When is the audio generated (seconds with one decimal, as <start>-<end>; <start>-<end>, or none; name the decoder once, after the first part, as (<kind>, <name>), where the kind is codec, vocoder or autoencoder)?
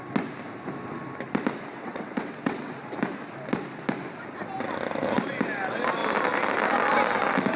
1.7-2.7 (vocoder, WaveNeXt)